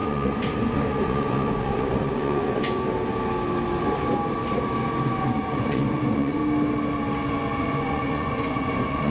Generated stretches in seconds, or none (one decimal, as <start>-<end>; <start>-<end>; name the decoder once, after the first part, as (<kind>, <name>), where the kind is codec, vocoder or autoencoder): 0.0-2.8 (vocoder, Vocos); 5.2-6.4; 7.6-9.1